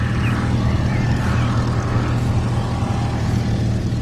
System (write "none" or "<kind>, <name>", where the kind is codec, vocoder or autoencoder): none